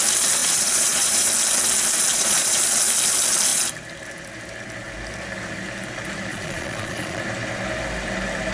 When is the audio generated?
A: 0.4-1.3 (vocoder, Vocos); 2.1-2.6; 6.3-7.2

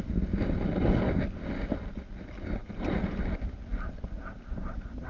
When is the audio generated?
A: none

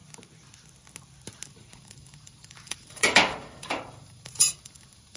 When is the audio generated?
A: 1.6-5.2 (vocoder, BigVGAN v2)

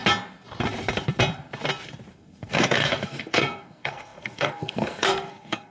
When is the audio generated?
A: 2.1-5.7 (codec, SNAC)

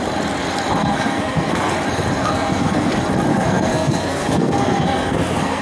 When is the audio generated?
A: 0.8-1.7 (codec, SNAC); 2.2-2.9; 3.3-5.6